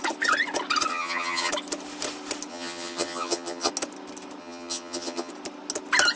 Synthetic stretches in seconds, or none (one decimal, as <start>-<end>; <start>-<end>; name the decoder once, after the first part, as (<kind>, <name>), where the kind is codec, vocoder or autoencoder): 0.9-1.5 (vocoder, HiFi-GAN); 2.5-3.7; 4.4-5.3